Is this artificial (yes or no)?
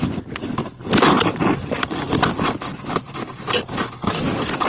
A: no